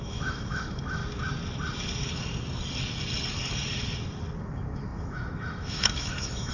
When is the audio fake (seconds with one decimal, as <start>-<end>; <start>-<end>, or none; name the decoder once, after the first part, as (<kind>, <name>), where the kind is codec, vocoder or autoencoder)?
0.0-1.0 (autoencoder, DAC-VAE); 4.4-6.5